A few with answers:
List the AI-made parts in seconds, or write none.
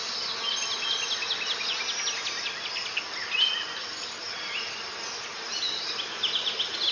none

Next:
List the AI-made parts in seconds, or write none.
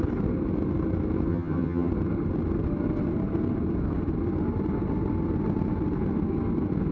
1.3-1.9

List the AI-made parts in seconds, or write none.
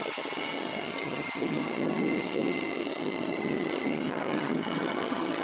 0.0-5.4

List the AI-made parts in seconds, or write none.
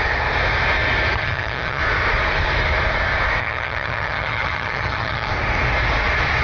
1.2-1.8; 3.4-5.3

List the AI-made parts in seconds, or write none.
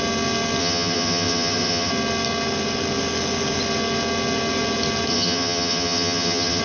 0.6-1.9; 5.1-6.6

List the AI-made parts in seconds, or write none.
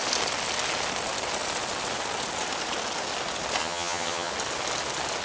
3.6-4.3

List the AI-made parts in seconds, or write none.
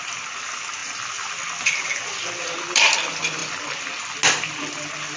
none